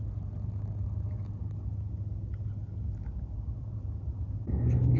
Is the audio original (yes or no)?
yes